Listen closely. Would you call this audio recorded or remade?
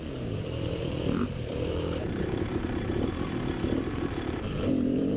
remade